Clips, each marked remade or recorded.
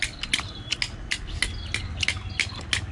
recorded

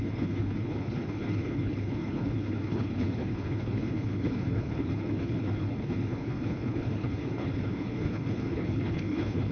remade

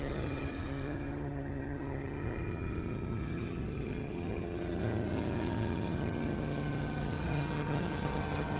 remade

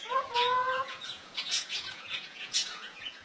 remade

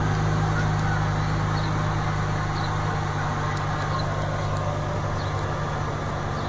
recorded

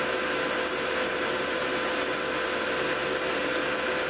recorded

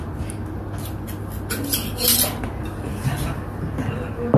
recorded